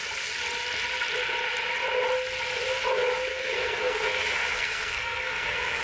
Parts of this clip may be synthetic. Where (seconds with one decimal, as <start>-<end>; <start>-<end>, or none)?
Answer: 3.3-5.8